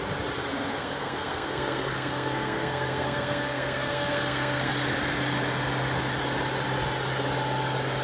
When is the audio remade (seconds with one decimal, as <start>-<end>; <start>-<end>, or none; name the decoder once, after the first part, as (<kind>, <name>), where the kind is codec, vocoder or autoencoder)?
0.5-4.7 (codec, SNAC)